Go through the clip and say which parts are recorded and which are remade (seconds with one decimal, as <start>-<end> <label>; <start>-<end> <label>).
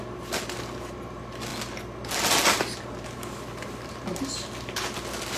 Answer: 0.0-5.4 recorded